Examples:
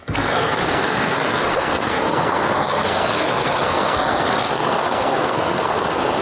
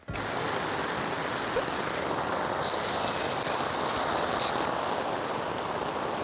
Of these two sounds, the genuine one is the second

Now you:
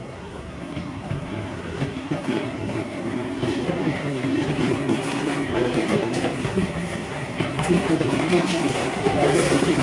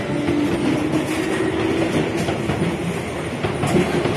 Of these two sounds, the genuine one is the second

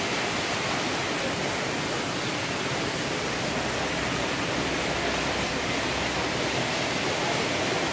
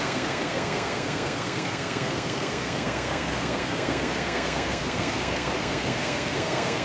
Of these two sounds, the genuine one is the first